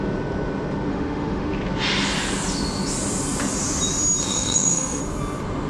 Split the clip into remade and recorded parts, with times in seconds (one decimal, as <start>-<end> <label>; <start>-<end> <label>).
0.0-0.9 recorded; 0.9-1.5 remade; 1.5-4.2 recorded; 4.2-5.0 remade; 5.0-5.7 recorded